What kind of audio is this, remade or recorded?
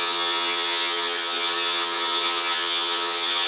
remade